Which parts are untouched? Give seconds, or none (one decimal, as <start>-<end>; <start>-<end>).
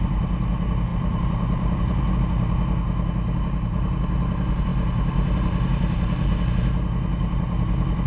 0.0-0.9; 2.1-8.1